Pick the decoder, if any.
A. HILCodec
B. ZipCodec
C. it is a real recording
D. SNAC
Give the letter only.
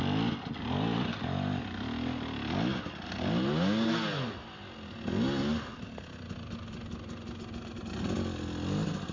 C